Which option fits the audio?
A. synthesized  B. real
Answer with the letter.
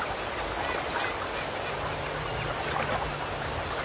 B